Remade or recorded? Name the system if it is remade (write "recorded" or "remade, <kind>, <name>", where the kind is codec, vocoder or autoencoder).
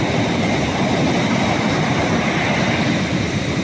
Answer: recorded